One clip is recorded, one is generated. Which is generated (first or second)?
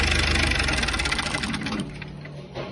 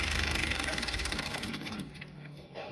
second